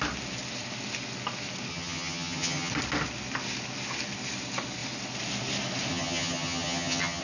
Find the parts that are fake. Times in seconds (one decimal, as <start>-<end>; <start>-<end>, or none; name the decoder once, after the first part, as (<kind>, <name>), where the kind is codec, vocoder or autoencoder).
1.7-2.7 (vocoder, HiFi-GAN); 5.9-7.2